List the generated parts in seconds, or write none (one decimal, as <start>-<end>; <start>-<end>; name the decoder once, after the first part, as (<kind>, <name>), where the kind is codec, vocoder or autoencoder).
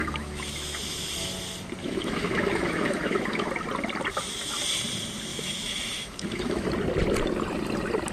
0.0-0.8 (autoencoder, DAC-VAE); 1.8-3.5; 5.3-6.7